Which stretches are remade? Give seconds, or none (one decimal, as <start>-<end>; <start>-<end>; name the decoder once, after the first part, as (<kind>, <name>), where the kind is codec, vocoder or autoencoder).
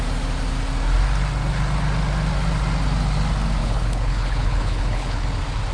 3.6-5.3 (codec, HILCodec)